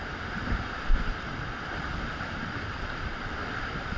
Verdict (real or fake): real